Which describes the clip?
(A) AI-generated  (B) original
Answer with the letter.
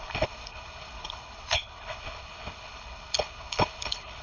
A